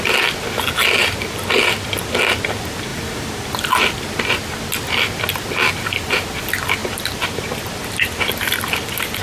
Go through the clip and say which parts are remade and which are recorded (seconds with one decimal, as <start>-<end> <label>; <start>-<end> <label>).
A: 0.0-6.8 recorded; 6.8-9.2 remade